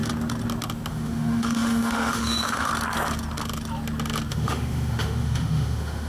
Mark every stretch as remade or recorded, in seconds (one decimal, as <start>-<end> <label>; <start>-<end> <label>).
0.0-0.9 recorded; 0.9-2.7 remade; 2.7-4.3 recorded; 4.3-6.1 remade